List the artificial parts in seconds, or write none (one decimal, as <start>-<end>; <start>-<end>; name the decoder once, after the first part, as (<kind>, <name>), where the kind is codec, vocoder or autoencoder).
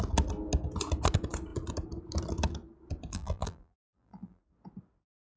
3.1-4.4 (vocoder, BigVGAN v2)